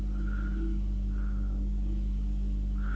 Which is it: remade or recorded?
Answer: recorded